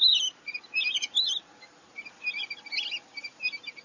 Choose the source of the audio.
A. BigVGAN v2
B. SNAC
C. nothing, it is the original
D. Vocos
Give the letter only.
C